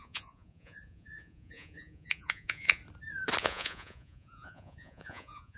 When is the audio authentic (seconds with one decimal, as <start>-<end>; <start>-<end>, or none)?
2.8-3.4